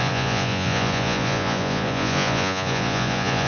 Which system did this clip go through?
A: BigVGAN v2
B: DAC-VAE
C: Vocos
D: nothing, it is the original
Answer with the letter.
C